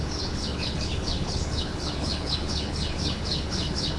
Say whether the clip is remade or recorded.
remade